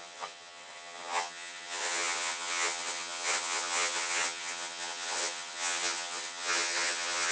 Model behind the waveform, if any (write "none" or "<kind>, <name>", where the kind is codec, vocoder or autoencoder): vocoder, HiFi-GAN